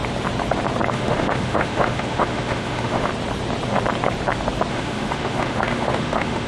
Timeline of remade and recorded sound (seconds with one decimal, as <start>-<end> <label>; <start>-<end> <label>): 0.0-0.9 recorded; 0.9-3.1 remade; 3.1-4.7 recorded; 4.7-6.5 remade